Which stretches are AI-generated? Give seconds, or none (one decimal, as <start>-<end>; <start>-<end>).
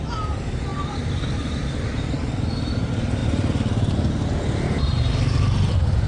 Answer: none